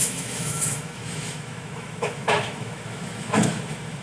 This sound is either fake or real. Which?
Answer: fake